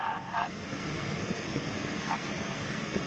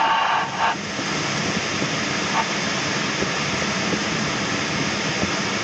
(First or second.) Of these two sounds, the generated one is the first